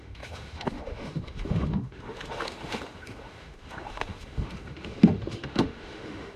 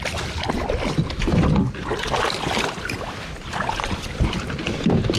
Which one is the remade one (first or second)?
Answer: first